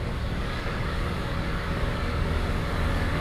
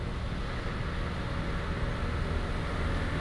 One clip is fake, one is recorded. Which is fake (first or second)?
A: first